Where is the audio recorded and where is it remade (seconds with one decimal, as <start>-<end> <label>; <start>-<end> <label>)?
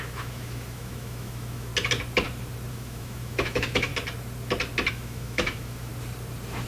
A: 0.0-1.7 remade; 1.7-2.7 recorded; 2.7-3.9 remade; 3.9-4.9 recorded; 4.9-5.9 remade; 5.9-6.7 recorded